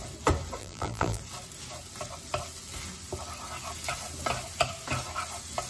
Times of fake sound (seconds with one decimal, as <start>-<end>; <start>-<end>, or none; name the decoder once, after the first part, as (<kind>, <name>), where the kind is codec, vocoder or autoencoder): 0.6-1.2 (vocoder, BigVGAN v2)

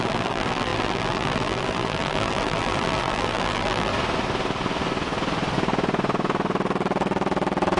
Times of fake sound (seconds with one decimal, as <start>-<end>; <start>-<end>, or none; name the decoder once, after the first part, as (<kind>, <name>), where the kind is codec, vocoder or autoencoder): 0.0-3.9 (vocoder, BigVGAN v2)

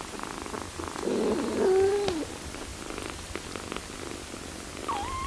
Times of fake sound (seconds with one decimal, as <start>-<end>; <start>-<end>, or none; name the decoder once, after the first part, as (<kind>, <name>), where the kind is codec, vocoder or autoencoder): none

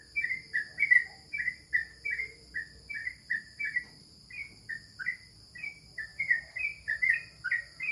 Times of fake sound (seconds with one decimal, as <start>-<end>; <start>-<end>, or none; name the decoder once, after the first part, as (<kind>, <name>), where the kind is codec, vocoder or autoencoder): 3.0-4.7 (vocoder, BigVGAN v2); 6.1-7.0

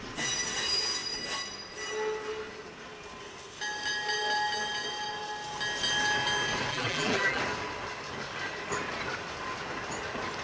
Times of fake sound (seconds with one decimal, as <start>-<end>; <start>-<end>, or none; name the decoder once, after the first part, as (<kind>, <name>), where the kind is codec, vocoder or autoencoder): 6.7-7.4 (vocoder, BigVGAN v2)

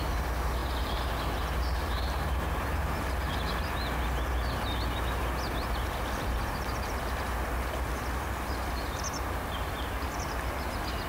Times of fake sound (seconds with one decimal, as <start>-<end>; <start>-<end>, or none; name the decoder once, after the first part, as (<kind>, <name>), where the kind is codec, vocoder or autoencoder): 0.6-3.3 (vocoder, BigVGAN v2)

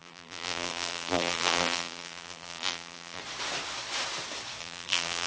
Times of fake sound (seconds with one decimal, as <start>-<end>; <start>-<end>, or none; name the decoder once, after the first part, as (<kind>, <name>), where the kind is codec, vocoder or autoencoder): 0.0-3.2 (vocoder, BigVGAN v2); 4.6-5.3